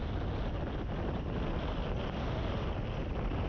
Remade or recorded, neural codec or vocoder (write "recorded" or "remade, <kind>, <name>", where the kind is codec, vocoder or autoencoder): recorded